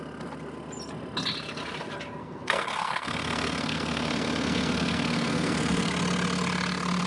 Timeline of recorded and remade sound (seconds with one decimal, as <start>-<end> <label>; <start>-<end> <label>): 0.0-2.2 recorded; 2.2-5.9 remade; 5.9-7.1 recorded